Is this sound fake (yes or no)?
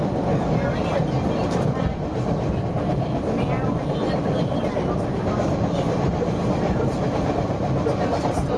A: no